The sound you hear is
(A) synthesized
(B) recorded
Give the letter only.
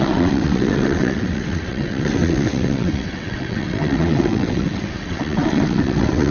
A